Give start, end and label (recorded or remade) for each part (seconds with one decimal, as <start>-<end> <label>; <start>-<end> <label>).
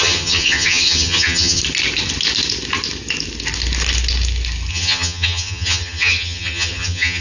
0.0-1.6 remade; 1.6-4.7 recorded; 4.7-7.2 remade